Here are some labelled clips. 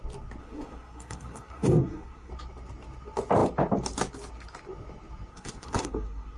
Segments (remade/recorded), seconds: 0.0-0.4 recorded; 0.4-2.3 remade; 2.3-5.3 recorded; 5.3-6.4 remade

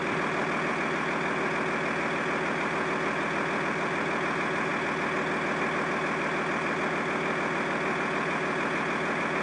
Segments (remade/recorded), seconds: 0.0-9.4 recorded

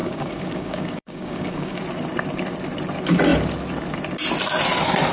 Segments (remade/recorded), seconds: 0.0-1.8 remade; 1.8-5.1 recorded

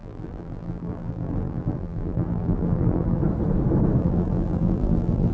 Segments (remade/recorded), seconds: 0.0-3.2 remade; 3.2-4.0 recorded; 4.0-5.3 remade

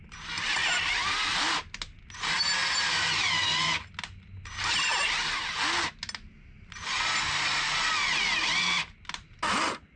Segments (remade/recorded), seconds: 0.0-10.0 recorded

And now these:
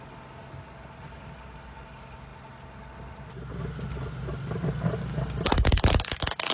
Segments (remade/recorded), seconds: 0.0-6.5 recorded